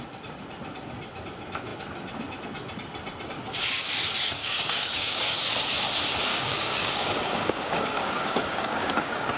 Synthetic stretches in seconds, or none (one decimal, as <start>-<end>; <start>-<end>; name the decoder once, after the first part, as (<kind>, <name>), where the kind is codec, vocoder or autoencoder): 4.4-5.2 (codec, DAC); 6.3-9.4